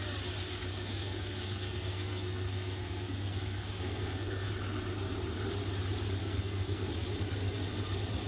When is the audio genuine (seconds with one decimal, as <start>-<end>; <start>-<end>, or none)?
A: 0.0-0.7; 4.5-6.2; 6.9-8.3